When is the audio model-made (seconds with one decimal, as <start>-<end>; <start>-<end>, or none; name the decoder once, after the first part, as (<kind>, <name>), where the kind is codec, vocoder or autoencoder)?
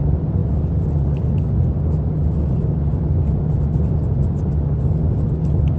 none